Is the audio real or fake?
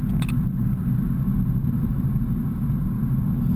real